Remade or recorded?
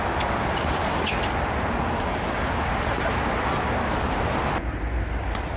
recorded